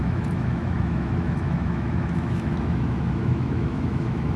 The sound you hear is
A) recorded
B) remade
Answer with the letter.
B